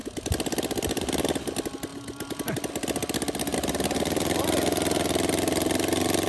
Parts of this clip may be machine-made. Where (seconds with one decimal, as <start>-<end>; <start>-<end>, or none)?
1.9-2.7; 3.5-4.4